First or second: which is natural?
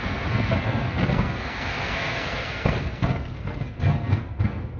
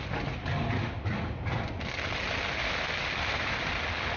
second